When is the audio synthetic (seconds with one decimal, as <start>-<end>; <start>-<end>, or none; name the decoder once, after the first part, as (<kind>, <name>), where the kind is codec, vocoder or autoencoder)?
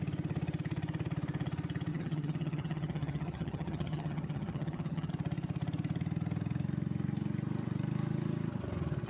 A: 1.9-5.1 (vocoder, HiFi-GAN)